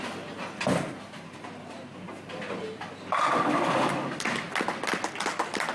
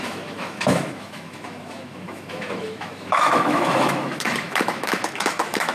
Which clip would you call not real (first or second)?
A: second